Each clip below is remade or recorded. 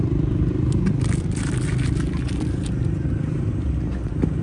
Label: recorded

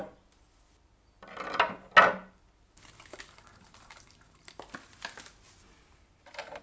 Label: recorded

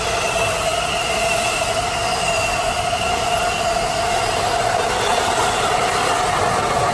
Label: recorded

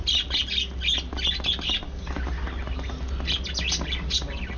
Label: recorded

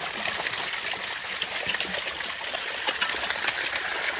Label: recorded